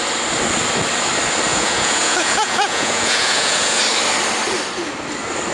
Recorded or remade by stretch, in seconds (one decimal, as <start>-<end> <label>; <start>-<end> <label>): 0.0-1.5 recorded; 1.5-3.8 remade; 3.8-5.5 recorded